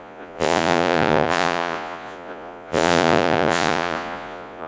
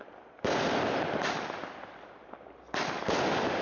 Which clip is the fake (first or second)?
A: first